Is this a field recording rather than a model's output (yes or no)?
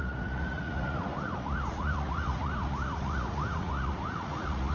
no